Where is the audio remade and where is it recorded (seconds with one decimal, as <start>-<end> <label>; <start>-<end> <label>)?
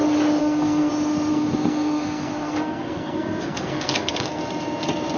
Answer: 0.0-0.4 recorded; 0.4-0.9 remade; 0.9-1.3 recorded; 1.3-4.4 remade; 4.4-5.2 recorded